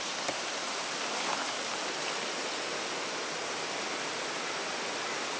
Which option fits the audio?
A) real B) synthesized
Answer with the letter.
A